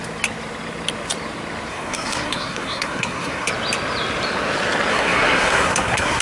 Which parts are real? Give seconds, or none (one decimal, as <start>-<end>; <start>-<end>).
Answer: 0.0-1.7; 3.5-4.9